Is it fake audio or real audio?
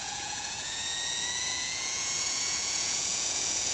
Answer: fake